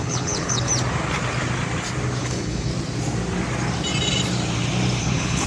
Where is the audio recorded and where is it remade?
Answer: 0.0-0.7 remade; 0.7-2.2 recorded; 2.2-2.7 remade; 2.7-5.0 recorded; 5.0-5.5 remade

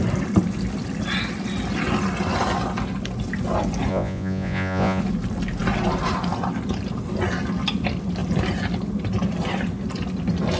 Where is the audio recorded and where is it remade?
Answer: 0.0-3.9 recorded; 3.9-5.0 remade; 5.0-10.6 recorded